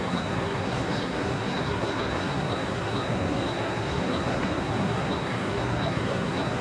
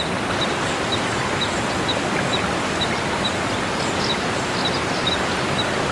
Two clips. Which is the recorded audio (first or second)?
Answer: second